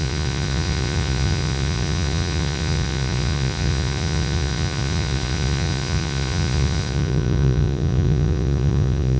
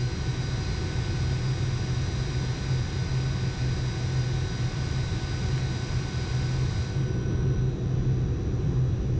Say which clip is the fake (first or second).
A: first